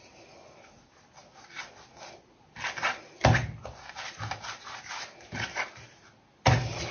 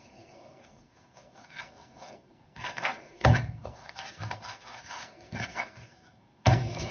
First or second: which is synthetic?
second